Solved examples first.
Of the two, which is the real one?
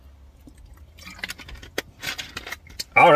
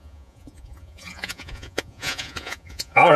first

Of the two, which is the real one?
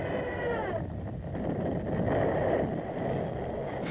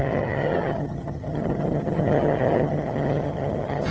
first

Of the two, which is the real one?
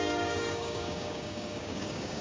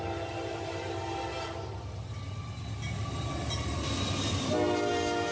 second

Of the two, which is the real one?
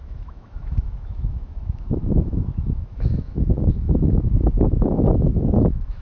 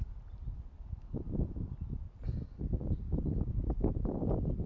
second